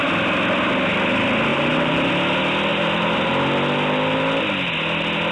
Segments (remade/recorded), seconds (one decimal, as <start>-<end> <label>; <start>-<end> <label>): 0.0-1.5 recorded; 1.5-2.1 remade; 2.1-2.7 recorded; 2.7-3.3 remade; 3.3-5.3 recorded